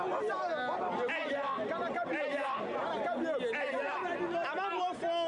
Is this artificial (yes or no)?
no